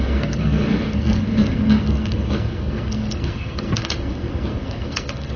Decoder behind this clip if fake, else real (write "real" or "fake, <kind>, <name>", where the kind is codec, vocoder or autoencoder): fake, codec, SNAC